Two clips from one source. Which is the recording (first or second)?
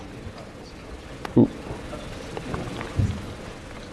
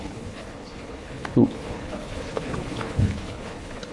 first